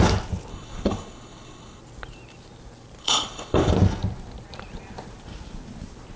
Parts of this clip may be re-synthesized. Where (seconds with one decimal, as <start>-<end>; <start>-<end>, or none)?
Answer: 0.5-1.8; 3.0-3.7